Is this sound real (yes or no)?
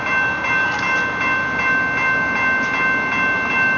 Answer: yes